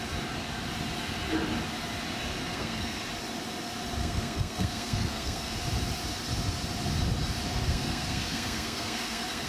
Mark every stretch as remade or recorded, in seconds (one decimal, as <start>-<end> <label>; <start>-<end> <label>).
0.0-2.4 recorded; 2.4-3.0 remade; 3.0-4.0 recorded; 4.0-5.5 remade; 5.5-7.5 recorded; 7.5-9.5 remade